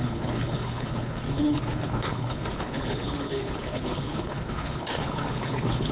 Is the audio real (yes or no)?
no